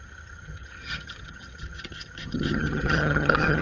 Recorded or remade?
remade